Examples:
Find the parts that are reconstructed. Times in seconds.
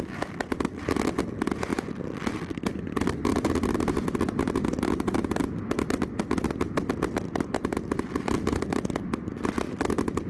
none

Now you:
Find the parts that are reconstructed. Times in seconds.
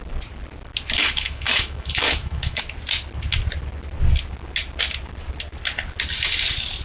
1.0-2.6 (autoencoder, DAC-VAE)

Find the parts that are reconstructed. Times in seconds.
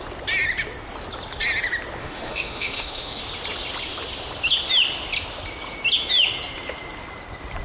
2.0-3.2 (autoencoder, DAC-VAE)